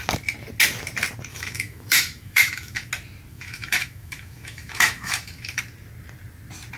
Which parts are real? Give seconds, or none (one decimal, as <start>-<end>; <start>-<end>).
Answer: 0.0-1.3; 2.9-3.3; 5.6-6.8